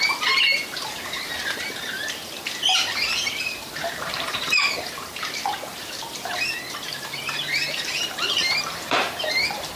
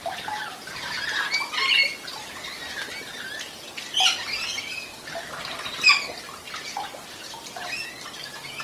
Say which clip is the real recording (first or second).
second